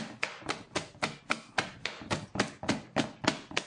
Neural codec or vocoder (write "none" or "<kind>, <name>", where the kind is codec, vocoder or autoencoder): none